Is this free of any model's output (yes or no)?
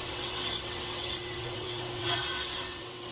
no